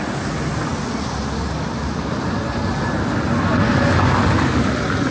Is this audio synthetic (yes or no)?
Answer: no